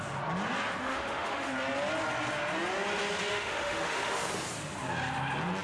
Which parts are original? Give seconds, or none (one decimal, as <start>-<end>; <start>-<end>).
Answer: 0.0-0.8; 1.5-3.3; 4.3-5.6